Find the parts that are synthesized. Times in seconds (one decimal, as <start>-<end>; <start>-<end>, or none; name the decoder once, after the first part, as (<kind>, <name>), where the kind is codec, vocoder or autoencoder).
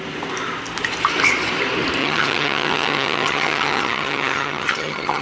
2.0-5.2 (vocoder, HiFi-GAN)